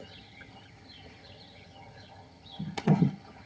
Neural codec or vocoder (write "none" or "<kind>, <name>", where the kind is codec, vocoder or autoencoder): vocoder, HiFi-GAN